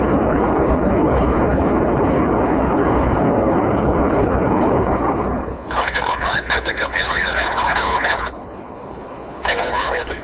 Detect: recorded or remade remade